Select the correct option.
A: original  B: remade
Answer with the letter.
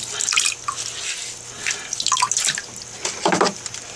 A